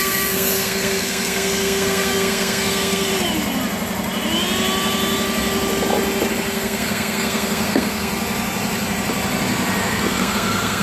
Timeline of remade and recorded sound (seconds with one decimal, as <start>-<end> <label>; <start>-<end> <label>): 0.0-3.1 remade; 3.1-6.3 recorded; 6.3-8.1 remade; 8.1-9.8 recorded; 9.8-10.8 remade